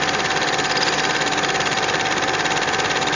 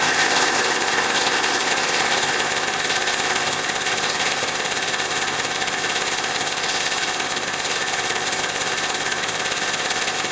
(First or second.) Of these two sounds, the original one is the first